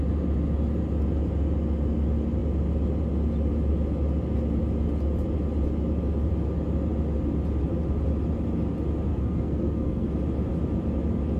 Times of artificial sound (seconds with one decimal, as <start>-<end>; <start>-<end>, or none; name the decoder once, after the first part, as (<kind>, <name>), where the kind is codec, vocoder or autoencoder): 9.1-10.1 (codec, SNAC)